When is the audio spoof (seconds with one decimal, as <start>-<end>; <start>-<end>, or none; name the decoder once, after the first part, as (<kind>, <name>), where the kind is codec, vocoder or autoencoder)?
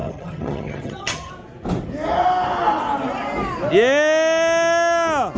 0.0-1.3 (vocoder, HiFi-GAN)